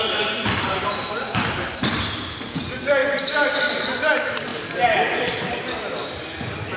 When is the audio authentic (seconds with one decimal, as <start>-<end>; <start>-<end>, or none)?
2.0-3.0; 3.8-4.5; 5.1-6.8